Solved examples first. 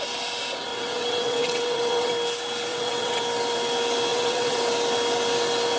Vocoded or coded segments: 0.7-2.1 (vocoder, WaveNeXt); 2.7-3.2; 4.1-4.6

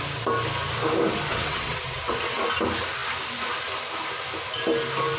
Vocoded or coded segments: 1.3-2.4 (vocoder, WaveNeXt)

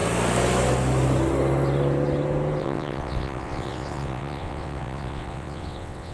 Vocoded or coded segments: 2.6-6.1 (vocoder, WaveNeXt)

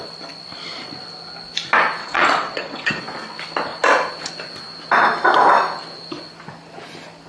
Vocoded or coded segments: 2.0-3.0 (vocoder, WaveNeXt)

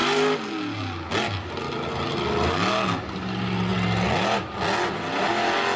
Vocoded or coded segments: none

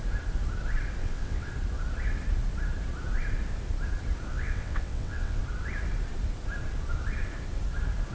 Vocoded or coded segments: 1.0-1.5 (vocoder, WaveNeXt); 4.3-5.4

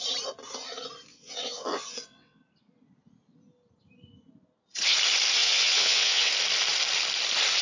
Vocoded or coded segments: 1.1-2.4 (vocoder, WaveNeXt); 5.4-6.3

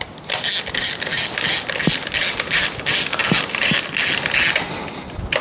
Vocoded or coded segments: none